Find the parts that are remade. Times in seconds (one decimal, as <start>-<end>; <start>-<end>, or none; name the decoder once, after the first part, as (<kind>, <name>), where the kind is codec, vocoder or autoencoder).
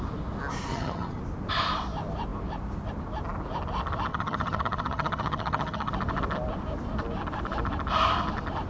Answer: 0.7-1.2 (vocoder, HiFi-GAN); 4.1-5.9